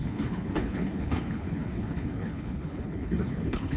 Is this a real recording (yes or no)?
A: no